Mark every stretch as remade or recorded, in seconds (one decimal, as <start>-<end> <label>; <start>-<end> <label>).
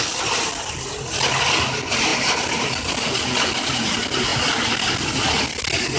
0.0-6.0 recorded